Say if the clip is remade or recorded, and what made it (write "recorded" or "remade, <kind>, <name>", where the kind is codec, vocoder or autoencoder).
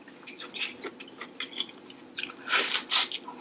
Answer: recorded